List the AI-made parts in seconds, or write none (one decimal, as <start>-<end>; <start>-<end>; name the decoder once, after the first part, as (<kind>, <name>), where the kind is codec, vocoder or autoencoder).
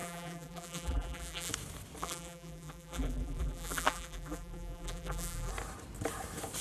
0.0-1.5 (vocoder, BigVGAN v2); 2.0-5.5